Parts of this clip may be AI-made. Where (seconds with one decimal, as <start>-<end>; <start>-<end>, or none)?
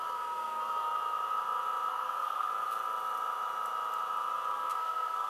0.0-0.6; 1.9-2.5; 4.5-5.3